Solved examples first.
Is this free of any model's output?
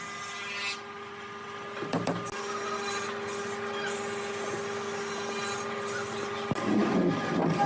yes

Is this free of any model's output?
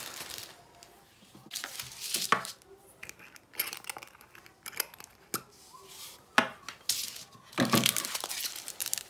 yes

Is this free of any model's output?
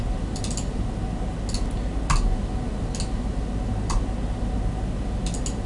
yes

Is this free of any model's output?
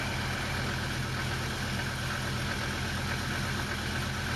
yes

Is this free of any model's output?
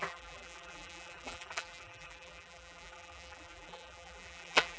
no